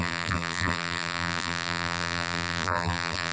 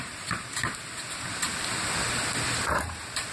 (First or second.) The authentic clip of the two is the second